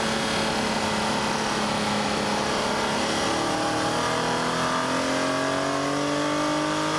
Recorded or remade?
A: recorded